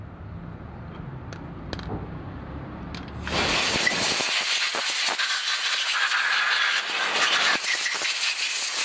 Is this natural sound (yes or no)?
yes